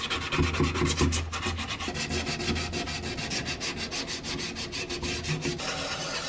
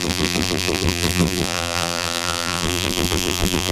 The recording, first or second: first